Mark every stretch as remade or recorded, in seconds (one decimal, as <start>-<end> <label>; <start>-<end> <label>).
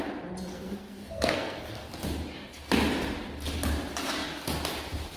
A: 0.0-0.5 recorded; 0.5-1.9 remade; 1.9-5.2 recorded